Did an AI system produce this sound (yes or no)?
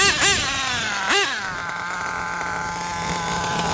no